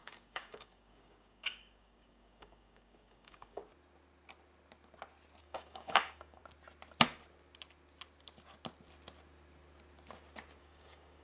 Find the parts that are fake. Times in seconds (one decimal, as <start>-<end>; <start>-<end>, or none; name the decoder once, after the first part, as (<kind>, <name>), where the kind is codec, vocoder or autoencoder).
0.0-3.6 (codec, DAC); 5.4-6.4; 10.6-11.2